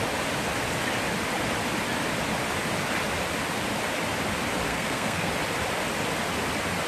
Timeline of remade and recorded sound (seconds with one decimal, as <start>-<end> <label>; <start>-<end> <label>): 0.0-4.7 recorded; 4.7-5.3 remade; 5.3-6.9 recorded